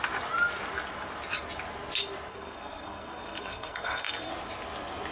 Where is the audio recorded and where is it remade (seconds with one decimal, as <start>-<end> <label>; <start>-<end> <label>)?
0.0-2.3 recorded; 2.3-4.3 remade; 4.3-5.1 recorded